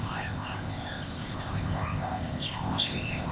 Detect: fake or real fake